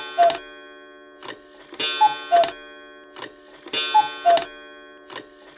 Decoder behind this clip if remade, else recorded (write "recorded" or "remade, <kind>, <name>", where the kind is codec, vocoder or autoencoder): recorded